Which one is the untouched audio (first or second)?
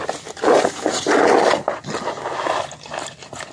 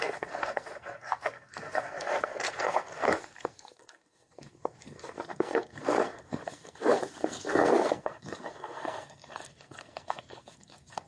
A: first